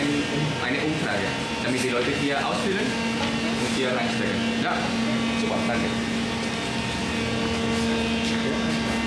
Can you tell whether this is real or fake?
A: real